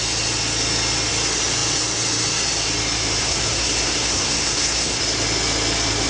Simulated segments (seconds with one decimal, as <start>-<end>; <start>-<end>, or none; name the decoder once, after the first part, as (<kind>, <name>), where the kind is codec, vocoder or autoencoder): 3.2-5.0 (codec, SNAC)